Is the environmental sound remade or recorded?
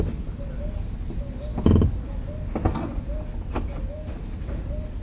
recorded